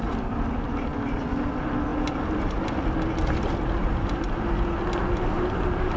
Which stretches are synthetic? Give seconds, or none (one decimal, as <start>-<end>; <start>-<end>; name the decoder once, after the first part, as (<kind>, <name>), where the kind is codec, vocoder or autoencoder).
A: none